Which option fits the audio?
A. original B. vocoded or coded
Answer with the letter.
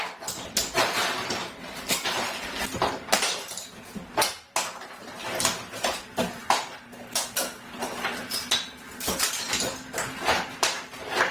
A